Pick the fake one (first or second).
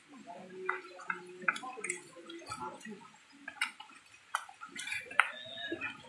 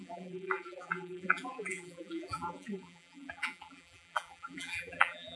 second